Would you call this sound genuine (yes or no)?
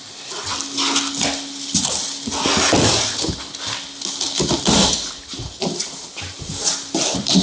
yes